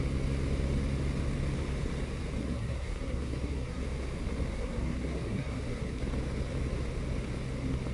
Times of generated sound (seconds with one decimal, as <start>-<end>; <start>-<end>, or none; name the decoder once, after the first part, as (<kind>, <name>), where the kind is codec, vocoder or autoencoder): 2.4-3.8 (codec, SNAC); 4.5-6.0